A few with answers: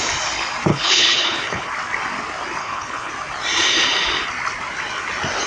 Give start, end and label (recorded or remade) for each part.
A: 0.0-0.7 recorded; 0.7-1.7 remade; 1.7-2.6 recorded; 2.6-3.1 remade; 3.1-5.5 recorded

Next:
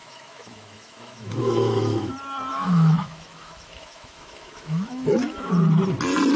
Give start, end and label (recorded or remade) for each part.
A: 0.0-2.1 remade; 2.1-2.5 recorded; 2.5-5.5 remade; 5.5-6.4 recorded

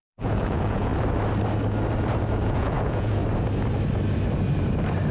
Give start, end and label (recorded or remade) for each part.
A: 0.0-0.9 remade; 0.9-2.3 recorded; 2.3-3.2 remade; 3.2-5.1 recorded

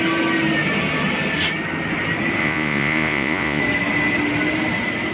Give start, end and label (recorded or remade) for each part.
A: 0.0-2.4 recorded; 2.4-3.6 remade; 3.6-5.1 recorded

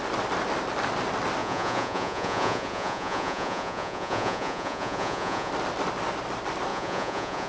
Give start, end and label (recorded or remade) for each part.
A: 0.0-1.4 recorded; 1.4-5.5 remade; 5.5-6.7 recorded; 6.7-7.5 remade